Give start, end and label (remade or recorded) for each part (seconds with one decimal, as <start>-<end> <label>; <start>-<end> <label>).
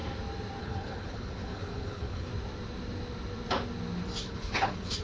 0.0-0.6 recorded; 0.6-2.3 remade; 2.3-4.2 recorded; 4.2-5.0 remade